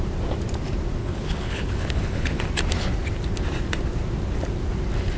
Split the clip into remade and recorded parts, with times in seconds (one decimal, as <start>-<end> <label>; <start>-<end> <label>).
0.0-1.0 recorded; 1.0-2.4 remade; 2.4-5.2 recorded